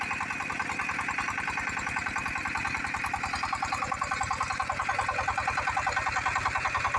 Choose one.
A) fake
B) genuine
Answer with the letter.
B